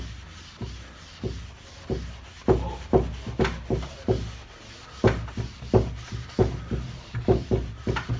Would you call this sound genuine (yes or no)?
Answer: yes